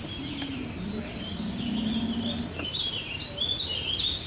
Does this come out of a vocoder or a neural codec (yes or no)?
no